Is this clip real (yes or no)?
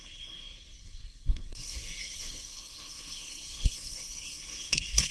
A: no